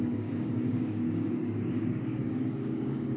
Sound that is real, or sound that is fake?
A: fake